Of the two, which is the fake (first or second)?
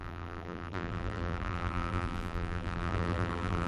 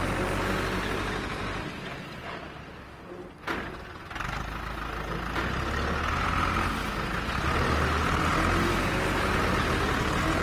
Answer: first